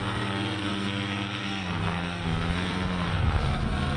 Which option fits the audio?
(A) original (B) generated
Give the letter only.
B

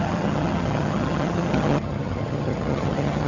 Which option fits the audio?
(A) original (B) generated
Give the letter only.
B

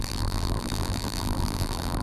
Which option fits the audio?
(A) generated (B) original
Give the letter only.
A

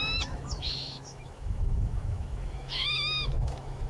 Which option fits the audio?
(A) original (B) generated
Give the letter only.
B